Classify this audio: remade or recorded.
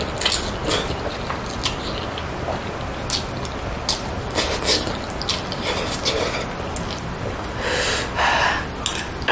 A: recorded